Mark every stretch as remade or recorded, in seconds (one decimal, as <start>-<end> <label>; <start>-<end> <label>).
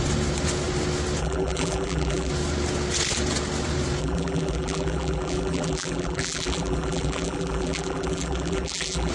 0.0-1.2 recorded; 1.2-2.3 remade; 2.3-4.0 recorded; 4.0-9.1 remade